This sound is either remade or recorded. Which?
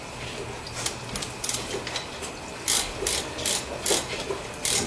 recorded